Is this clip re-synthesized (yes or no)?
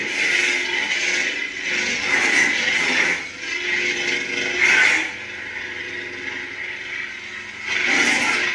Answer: no